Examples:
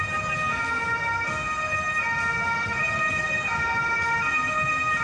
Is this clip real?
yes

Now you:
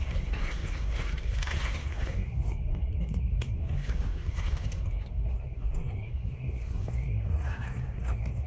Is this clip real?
no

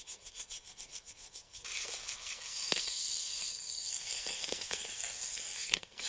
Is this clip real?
no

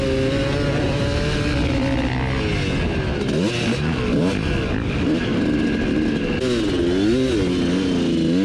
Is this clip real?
yes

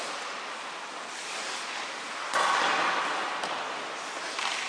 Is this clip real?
yes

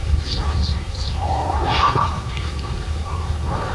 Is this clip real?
no